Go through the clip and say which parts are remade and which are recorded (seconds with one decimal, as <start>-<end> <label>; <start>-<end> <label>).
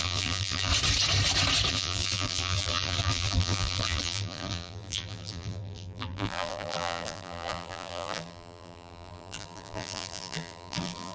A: 0.0-0.7 remade; 0.7-1.7 recorded; 1.7-11.1 remade